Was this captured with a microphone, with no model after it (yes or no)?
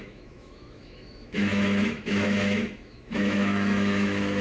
no